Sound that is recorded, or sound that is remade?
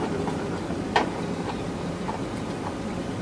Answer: remade